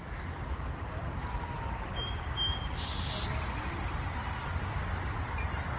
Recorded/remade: recorded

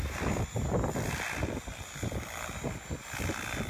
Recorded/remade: recorded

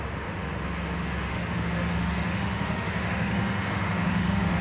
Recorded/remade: remade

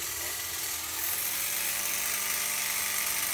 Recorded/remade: recorded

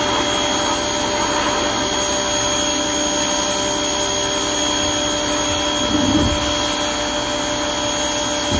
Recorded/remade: recorded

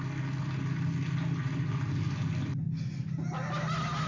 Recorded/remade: recorded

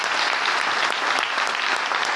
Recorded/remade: recorded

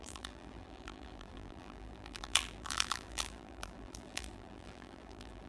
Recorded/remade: remade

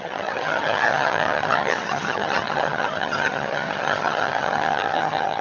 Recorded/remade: remade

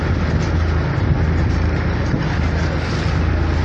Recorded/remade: recorded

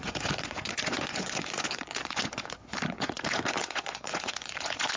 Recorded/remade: remade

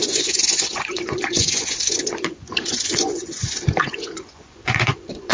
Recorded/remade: remade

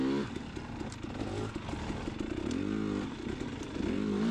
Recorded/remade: recorded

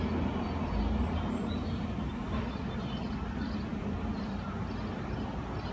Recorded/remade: recorded